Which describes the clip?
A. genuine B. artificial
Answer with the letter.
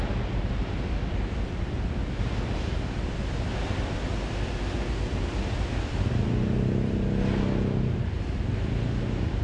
A